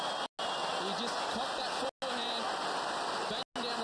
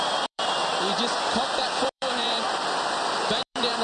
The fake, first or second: second